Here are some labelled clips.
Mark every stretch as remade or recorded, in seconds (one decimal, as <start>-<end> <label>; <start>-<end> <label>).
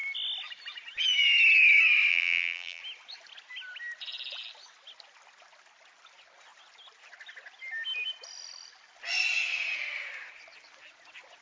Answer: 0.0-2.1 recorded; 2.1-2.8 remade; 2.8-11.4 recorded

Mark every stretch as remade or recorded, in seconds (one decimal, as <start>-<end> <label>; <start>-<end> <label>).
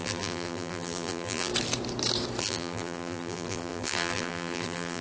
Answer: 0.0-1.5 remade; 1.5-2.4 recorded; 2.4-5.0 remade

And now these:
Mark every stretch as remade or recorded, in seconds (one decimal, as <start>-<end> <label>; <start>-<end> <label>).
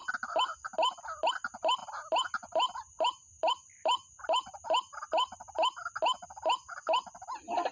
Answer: 0.0-1.8 recorded; 1.8-4.6 remade; 4.6-7.7 recorded